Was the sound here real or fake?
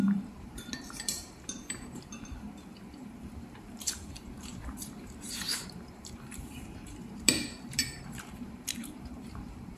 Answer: fake